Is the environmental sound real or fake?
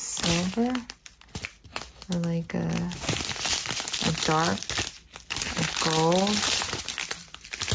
real